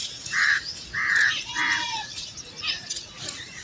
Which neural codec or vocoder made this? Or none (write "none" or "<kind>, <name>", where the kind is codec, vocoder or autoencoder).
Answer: vocoder, Vocos